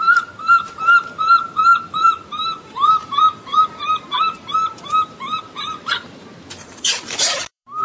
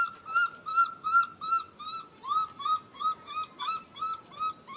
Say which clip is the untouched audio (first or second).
second